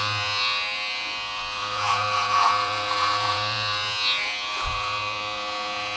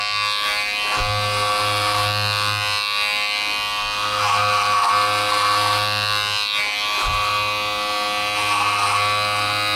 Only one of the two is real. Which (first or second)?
second